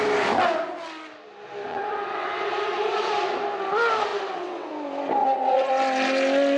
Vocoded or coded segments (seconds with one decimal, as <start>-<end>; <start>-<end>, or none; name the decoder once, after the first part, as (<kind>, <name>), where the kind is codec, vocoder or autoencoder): 1.7-3.1 (vocoder, WaveNeXt); 4.1-4.7; 5.2-5.7